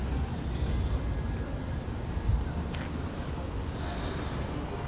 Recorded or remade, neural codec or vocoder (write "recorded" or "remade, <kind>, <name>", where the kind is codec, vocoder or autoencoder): recorded